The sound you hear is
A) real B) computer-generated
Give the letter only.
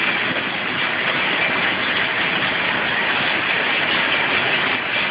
A